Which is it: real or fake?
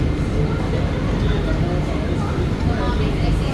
real